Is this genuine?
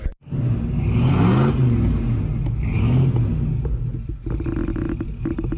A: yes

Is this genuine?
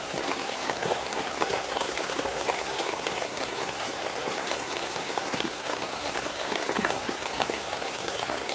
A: no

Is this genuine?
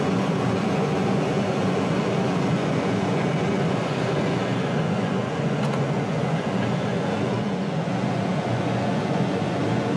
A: no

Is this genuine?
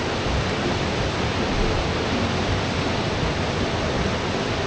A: yes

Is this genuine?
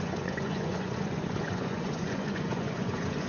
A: no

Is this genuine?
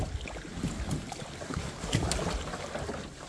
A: yes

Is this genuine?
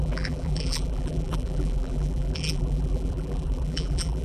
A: no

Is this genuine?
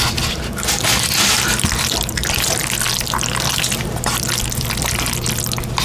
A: yes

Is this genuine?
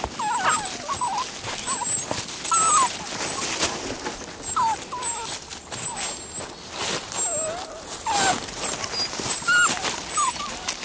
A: yes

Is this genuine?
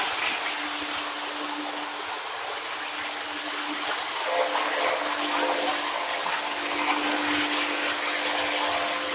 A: yes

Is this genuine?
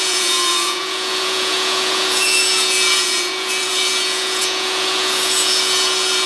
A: no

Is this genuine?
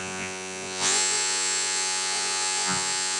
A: no